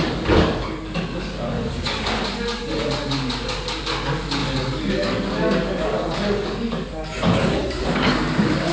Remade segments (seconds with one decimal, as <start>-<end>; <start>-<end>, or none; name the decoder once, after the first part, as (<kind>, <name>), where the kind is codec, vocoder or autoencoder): 0.0-8.7 (codec, DAC)